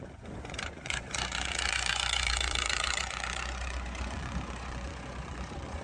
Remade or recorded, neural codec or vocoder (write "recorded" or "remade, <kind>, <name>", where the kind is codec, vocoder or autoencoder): remade, vocoder, Vocos